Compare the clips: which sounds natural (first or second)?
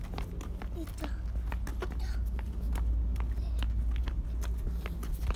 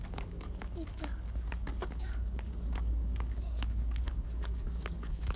first